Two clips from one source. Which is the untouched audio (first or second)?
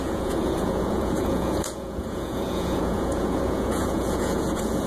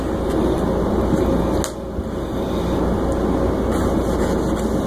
second